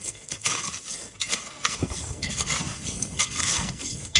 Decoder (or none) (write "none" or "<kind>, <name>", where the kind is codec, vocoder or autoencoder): codec, SNAC